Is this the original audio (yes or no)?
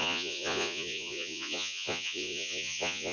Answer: no